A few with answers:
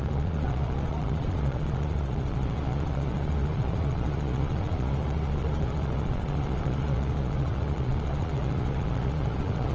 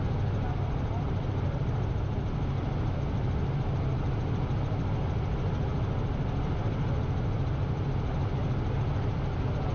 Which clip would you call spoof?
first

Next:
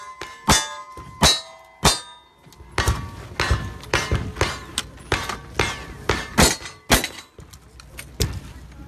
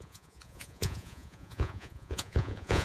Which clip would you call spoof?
second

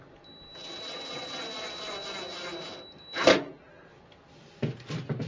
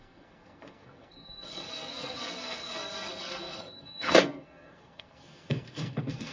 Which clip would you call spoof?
second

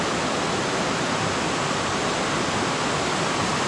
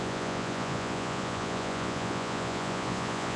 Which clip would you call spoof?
second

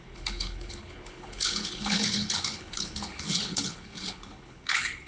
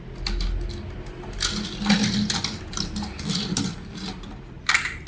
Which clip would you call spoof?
first